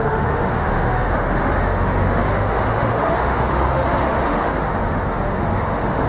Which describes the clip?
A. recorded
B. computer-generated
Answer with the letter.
B